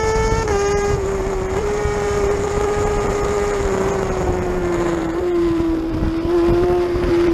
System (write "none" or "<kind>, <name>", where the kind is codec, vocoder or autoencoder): vocoder, BigVGAN v2